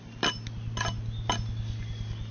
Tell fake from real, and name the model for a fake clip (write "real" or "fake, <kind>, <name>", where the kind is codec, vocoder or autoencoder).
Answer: real